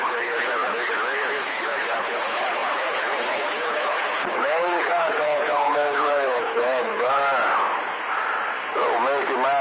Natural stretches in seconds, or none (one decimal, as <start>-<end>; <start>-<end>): 7.2-9.6